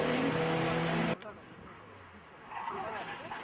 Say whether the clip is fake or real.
real